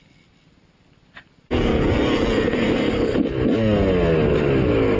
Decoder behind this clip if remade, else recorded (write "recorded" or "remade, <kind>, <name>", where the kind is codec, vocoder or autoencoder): recorded